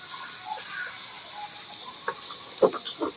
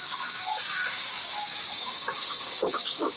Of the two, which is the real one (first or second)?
first